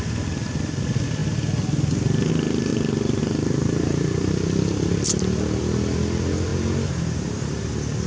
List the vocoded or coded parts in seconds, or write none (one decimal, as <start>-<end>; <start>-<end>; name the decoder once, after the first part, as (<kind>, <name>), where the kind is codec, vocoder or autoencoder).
none